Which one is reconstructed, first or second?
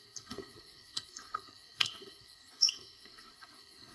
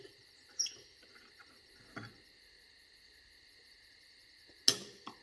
first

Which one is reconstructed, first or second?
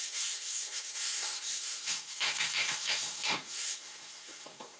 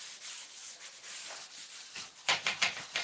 first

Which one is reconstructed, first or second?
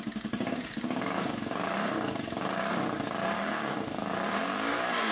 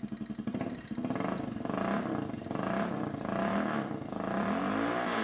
first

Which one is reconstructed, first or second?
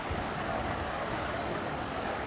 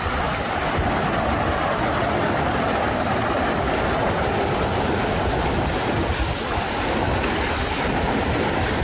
first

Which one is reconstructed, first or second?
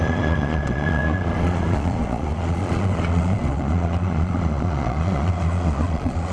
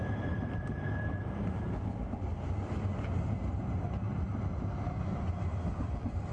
first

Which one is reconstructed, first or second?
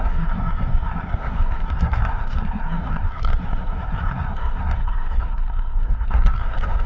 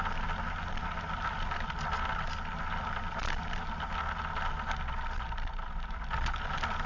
first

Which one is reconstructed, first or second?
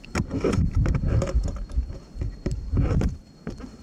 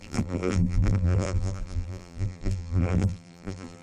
second